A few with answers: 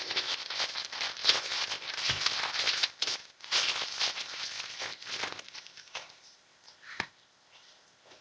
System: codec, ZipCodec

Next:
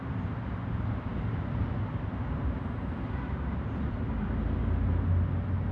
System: none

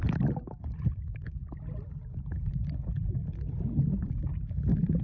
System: none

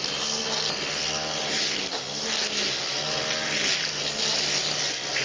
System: none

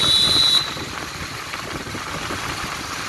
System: none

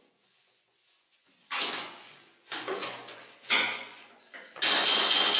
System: vocoder, Vocos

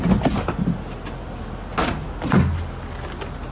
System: none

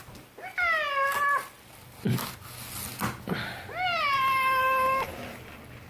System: none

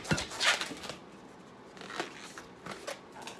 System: none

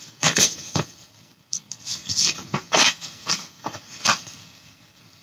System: codec, SNAC